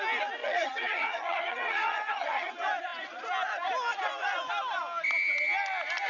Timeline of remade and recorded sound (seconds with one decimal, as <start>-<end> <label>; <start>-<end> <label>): 0.0-0.4 recorded; 0.4-2.5 remade; 2.5-6.1 recorded